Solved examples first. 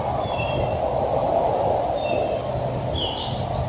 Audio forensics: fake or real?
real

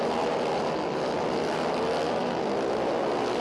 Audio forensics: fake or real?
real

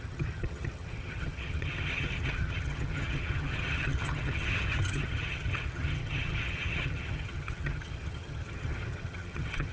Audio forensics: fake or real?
fake